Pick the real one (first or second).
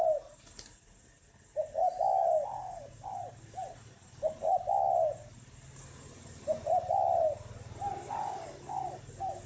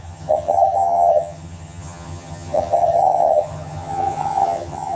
first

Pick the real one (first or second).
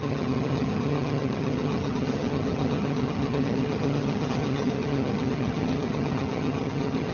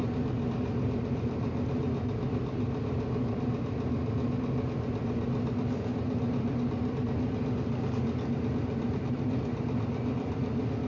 second